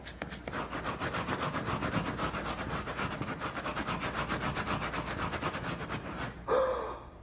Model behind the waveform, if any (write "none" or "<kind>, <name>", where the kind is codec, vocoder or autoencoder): none